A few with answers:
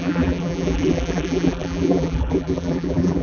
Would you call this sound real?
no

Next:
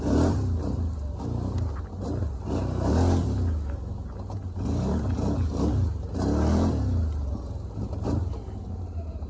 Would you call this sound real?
yes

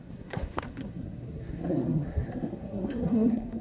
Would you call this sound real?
no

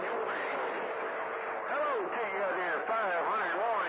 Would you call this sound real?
yes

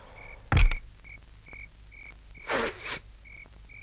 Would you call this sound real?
yes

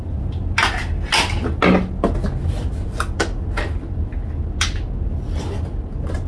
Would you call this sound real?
yes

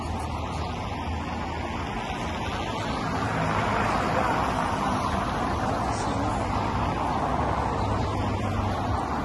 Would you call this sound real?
yes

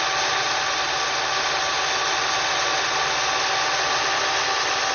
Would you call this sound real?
yes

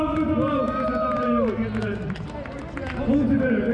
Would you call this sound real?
yes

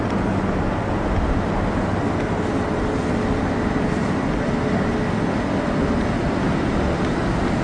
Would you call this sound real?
yes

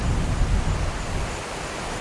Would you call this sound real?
yes